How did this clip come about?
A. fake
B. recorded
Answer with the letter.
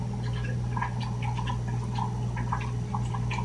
B